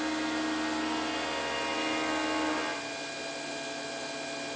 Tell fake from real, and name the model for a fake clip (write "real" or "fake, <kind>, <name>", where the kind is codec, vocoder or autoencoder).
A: real